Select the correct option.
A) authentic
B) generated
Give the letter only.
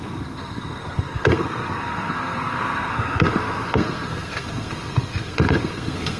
B